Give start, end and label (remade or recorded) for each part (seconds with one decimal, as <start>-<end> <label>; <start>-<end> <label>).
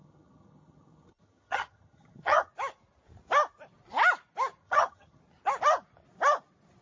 0.0-2.5 remade; 2.5-4.6 recorded; 4.6-5.2 remade; 5.2-6.8 recorded